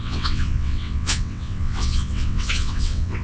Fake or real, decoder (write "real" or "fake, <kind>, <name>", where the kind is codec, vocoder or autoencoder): fake, vocoder, WaveNeXt